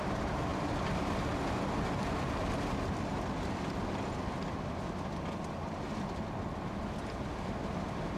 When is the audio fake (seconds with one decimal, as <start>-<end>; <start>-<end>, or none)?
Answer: 0.5-1.6